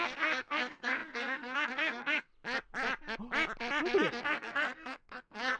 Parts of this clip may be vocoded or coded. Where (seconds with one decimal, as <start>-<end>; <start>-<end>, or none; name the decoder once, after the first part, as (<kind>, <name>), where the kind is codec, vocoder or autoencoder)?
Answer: 0.0-2.3 (codec, SNAC); 4.1-5.6

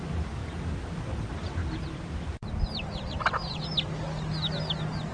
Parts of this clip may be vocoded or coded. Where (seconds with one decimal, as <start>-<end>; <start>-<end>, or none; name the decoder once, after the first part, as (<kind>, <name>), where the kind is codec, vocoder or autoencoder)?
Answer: none

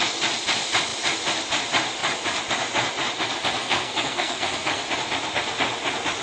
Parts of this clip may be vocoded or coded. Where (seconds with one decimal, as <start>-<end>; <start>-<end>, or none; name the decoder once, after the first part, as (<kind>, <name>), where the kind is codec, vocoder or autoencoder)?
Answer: 3.6-4.8 (codec, SNAC)